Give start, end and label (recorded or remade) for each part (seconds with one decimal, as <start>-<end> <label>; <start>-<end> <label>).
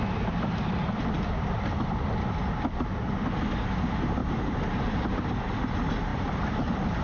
0.0-4.2 recorded; 4.2-5.1 remade; 5.1-6.1 recorded; 6.1-7.0 remade